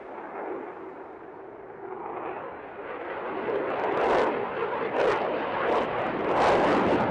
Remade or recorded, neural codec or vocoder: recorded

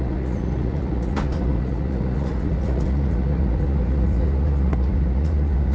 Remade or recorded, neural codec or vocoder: remade, vocoder, Vocos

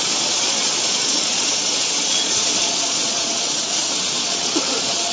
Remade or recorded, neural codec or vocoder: remade, vocoder, Vocos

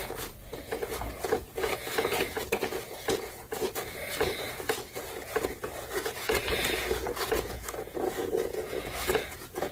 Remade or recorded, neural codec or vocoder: remade, vocoder, Vocos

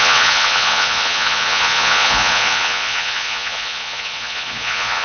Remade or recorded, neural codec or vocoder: remade, vocoder, Vocos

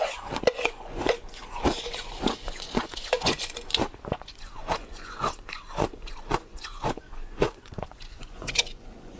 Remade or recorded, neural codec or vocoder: remade, vocoder, Vocos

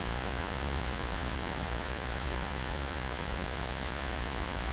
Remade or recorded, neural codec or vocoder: remade, vocoder, Vocos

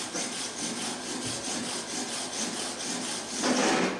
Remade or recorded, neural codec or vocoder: recorded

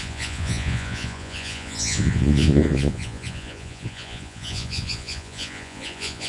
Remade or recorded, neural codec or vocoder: remade, vocoder, Vocos